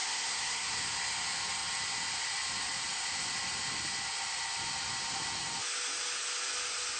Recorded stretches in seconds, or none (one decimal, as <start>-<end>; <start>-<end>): 0.8-7.0